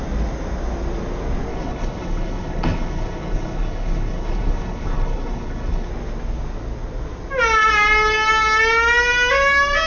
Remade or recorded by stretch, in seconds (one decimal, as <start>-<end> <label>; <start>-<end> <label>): 0.0-1.5 recorded; 1.5-5.9 remade; 5.9-9.9 recorded